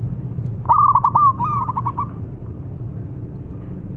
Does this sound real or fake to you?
real